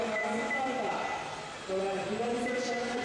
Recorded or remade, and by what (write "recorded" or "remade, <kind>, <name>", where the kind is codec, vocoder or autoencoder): recorded